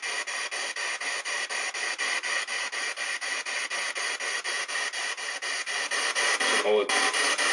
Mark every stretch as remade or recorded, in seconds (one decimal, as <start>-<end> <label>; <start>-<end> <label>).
0.0-7.5 recorded